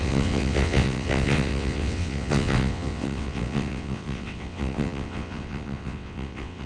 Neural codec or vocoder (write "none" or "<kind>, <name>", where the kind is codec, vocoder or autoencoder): vocoder, WaveNeXt